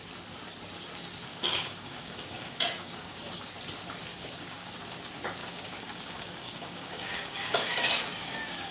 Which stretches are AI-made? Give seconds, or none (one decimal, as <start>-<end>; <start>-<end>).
1.3-3.5; 4.1-4.7; 5.4-8.7